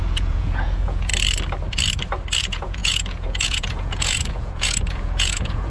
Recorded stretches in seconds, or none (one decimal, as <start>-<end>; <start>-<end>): 1.1-2.4